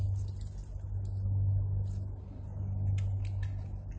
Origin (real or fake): real